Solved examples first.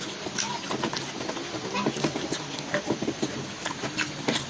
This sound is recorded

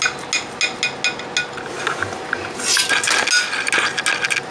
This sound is recorded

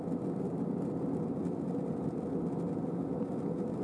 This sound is recorded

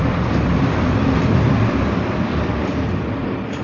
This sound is recorded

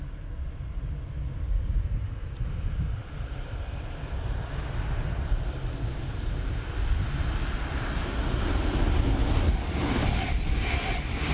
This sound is recorded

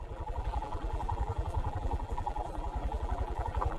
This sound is remade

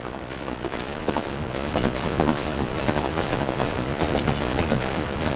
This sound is remade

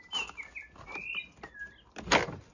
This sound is recorded